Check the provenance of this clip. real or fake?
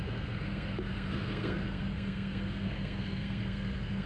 fake